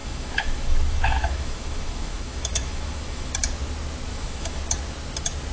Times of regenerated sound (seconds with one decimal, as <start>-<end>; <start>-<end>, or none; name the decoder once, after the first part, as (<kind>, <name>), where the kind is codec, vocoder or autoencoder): 0.0-3.3 (autoencoder, DAC-VAE); 4.1-4.6